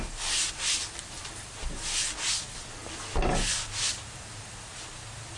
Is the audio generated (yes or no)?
no